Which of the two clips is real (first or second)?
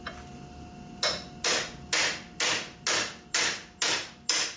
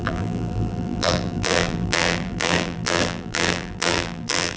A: first